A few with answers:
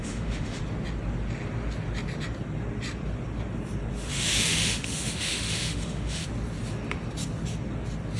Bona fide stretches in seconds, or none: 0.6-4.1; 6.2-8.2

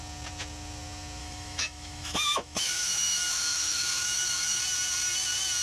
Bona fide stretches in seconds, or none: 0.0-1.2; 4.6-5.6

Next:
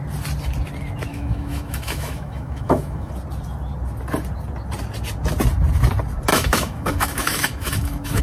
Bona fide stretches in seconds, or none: 0.0-1.1; 3.1-6.3